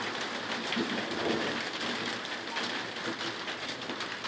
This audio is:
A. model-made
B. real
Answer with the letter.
B